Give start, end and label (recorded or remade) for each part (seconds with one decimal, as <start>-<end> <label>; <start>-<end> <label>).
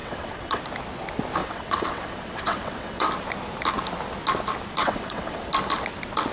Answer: 0.0-0.6 remade; 0.6-1.4 recorded; 1.4-3.1 remade; 3.1-4.8 recorded; 4.8-5.5 remade; 5.5-6.3 recorded